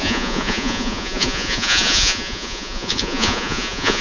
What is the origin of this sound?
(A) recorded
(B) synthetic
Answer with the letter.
B